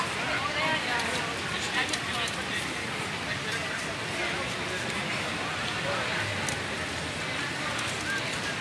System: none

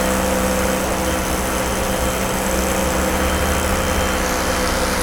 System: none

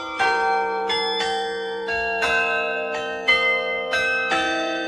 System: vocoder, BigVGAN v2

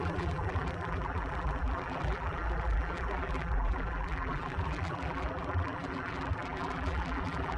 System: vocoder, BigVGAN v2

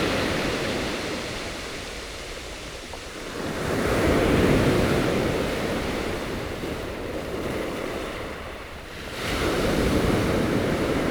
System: vocoder, BigVGAN v2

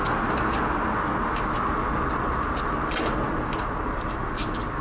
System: none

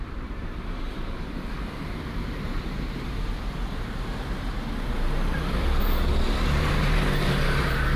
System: vocoder, BigVGAN v2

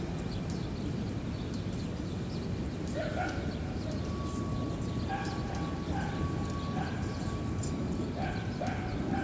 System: none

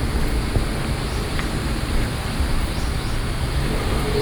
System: none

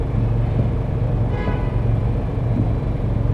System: vocoder, BigVGAN v2